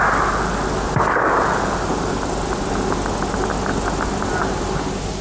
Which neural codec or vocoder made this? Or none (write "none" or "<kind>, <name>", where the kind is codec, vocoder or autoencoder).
none